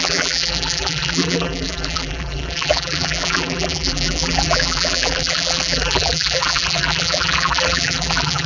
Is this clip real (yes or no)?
no